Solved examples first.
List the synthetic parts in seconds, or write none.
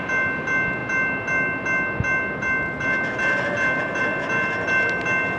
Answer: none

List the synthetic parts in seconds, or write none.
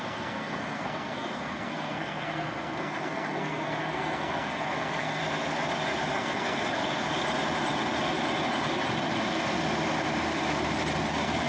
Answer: 0.0-5.2 (codec, SNAC); 6.1-6.8; 11.1-11.5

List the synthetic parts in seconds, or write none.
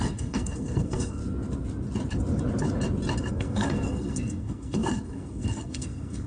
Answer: 0.0-1.2 (codec, SNAC); 3.3-6.3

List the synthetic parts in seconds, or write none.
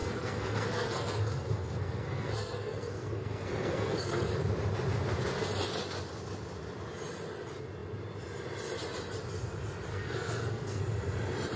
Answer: 0.0-4.3 (codec, SNAC); 9.9-10.8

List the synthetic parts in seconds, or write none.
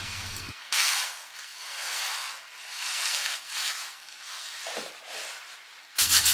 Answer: 0.0-4.6 (codec, SNAC); 5.8-6.3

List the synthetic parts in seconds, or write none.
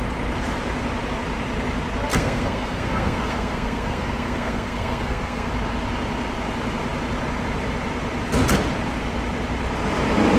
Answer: 2.1-5.5 (codec, SNAC)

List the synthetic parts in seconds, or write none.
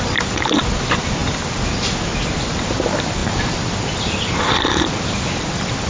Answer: none